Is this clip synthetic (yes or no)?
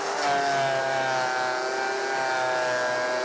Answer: no